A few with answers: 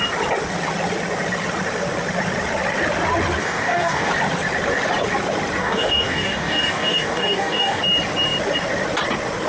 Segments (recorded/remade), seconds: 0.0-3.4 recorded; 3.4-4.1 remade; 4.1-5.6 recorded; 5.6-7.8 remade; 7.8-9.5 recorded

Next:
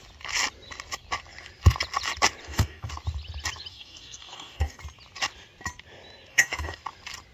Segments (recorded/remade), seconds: 0.0-2.4 recorded; 2.4-2.9 remade; 2.9-3.7 recorded; 3.7-4.8 remade; 4.8-6.3 recorded; 6.3-6.8 remade; 6.8-7.3 recorded

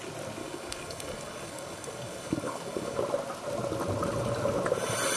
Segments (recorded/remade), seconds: 0.0-0.4 recorded; 0.4-3.0 remade; 3.0-5.2 recorded

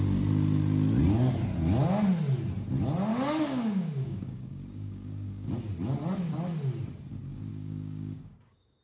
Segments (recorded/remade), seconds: 0.0-3.1 recorded; 3.1-5.5 remade; 5.5-7.5 recorded; 7.5-8.8 remade

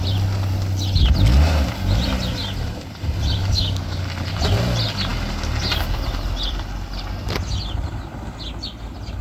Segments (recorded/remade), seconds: 0.0-3.4 recorded; 3.4-4.0 remade; 4.0-9.2 recorded

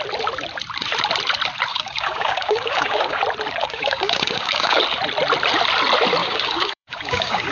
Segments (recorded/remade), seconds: 0.0-1.7 recorded; 1.7-3.2 remade; 3.2-3.6 recorded; 3.6-4.8 remade; 4.8-6.2 recorded; 6.2-7.5 remade

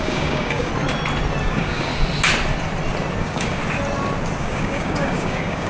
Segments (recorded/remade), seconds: 0.0-0.7 remade; 0.7-1.4 recorded; 1.4-1.9 remade; 1.9-3.2 recorded; 3.2-3.6 remade; 3.6-4.4 recorded; 4.4-5.7 remade